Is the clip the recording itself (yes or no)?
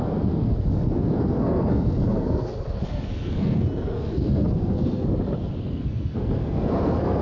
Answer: no